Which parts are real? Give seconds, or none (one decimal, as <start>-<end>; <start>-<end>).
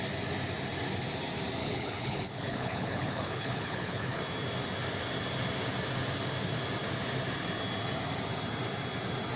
0.0-1.6; 4.2-9.4